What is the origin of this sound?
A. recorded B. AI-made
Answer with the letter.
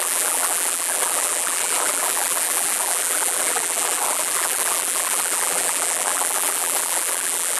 B